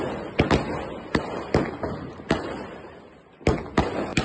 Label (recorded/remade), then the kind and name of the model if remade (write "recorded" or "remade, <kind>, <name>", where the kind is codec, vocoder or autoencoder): recorded